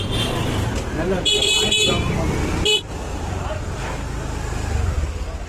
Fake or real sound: real